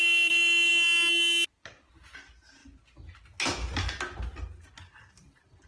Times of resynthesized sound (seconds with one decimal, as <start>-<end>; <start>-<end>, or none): none